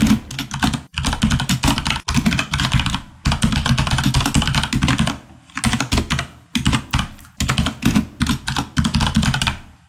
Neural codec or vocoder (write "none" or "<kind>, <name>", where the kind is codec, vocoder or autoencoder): none